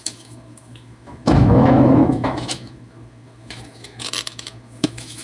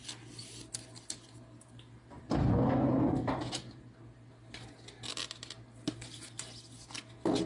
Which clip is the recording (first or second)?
second